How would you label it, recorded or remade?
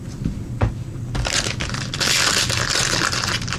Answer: recorded